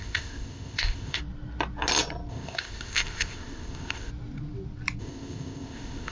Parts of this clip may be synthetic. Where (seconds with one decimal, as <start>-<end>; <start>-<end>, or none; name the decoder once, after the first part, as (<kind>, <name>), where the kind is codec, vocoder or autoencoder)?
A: 0.0-1.2 (codec, ZipCodec); 2.3-4.1; 5.0-6.1